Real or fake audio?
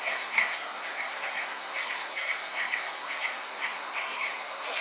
fake